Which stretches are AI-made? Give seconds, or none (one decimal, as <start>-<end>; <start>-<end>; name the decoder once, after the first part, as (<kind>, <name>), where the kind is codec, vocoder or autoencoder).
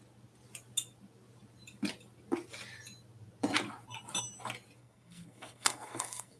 4.8-6.4 (codec, SNAC)